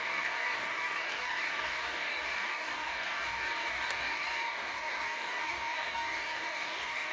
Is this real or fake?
fake